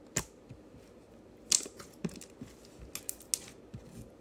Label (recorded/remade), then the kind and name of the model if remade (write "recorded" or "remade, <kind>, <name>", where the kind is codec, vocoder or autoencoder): recorded